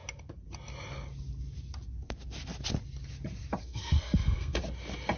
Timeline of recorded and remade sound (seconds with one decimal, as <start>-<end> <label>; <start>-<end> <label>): 0.0-3.6 recorded; 3.6-4.6 remade; 4.6-5.2 recorded

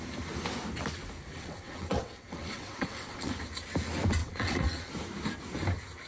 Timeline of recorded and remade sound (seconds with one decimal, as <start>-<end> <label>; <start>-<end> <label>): 0.0-1.3 recorded; 1.3-3.3 remade; 3.3-4.2 recorded; 4.2-4.9 remade; 4.9-6.1 recorded